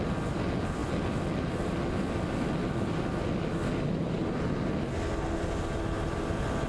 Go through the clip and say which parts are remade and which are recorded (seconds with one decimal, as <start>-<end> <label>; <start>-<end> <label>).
0.0-6.7 recorded